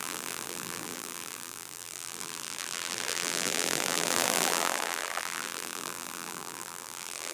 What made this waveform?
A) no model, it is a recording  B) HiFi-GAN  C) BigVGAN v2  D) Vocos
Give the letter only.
C